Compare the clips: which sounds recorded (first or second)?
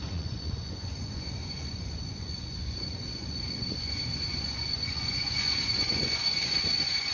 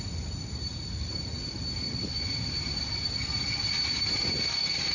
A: second